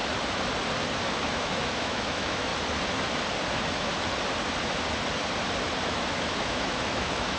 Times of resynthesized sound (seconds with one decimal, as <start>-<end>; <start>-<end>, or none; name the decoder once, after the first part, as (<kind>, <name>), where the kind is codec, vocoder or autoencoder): 1.3-2.5 (autoencoder, DAC-VAE); 3.5-3.9; 5.8-7.4